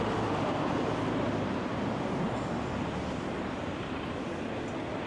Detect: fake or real real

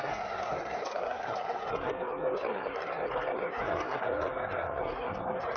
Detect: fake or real fake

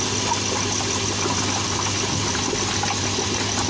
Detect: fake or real real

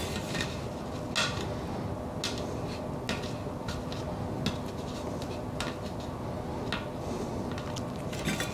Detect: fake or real real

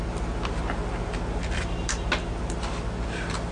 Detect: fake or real real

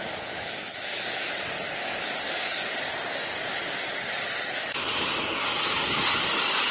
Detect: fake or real fake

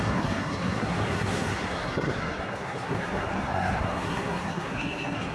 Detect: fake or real fake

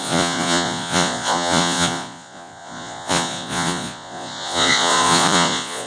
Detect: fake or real fake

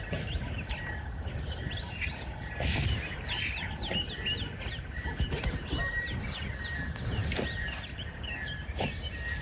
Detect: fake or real real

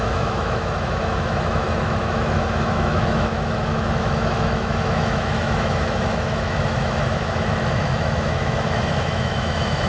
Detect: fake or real fake